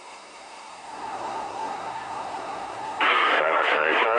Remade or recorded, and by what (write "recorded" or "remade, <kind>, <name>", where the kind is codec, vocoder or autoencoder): remade, codec, SNAC